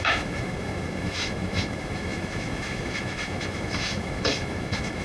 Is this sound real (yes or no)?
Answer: no